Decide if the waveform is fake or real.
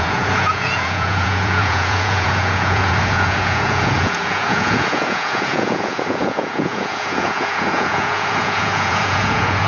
fake